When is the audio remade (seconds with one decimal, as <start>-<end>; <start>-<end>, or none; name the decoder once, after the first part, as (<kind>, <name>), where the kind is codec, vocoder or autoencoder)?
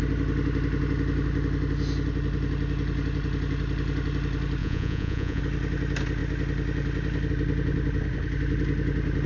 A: 4.6-5.4 (vocoder, Vocos)